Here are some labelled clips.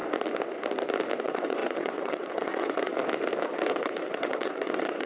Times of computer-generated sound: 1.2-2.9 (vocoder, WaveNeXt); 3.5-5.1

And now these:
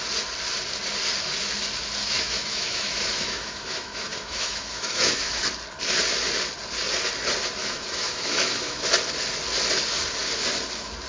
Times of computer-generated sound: 2.0-5.4 (autoencoder, DAC-VAE); 7.6-8.9

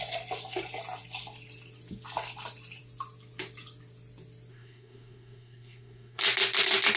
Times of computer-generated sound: 4.5-6.2 (codec, SNAC)

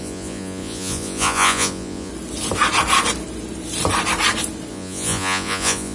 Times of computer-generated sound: 0.0-2.1 (vocoder, Vocos); 4.7-5.9

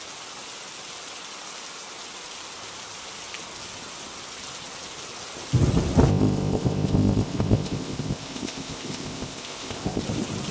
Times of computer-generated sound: 6.1-10.0 (codec, ZipCodec)

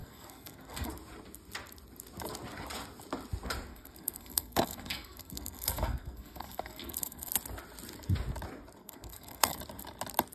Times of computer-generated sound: 0.0-0.9 (codec, SNAC); 3.7-7.3; 8.8-9.6

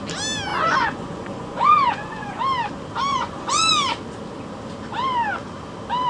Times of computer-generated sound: 0.5-2.4 (vocoder, Vocos); 3.1-3.7